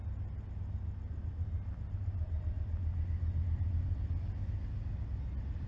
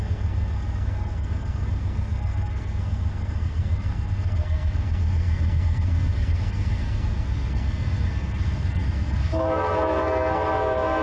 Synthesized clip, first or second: second